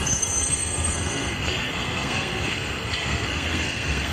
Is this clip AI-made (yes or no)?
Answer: yes